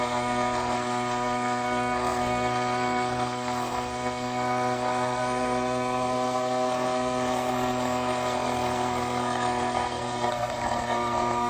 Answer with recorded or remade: remade